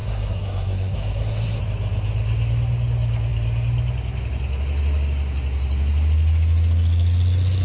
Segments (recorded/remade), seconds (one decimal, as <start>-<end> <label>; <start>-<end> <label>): 0.0-1.6 remade; 1.6-7.6 recorded